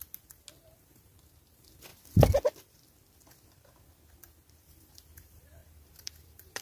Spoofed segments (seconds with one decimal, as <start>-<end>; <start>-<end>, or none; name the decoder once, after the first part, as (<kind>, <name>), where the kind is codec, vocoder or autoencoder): 0.6-1.9 (vocoder, BigVGAN v2); 4.9-6.6